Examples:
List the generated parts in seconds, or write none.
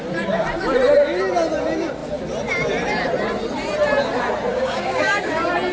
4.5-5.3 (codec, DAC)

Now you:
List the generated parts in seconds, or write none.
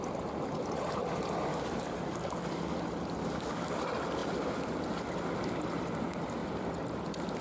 1.5-2.8 (codec, DAC); 3.2-3.8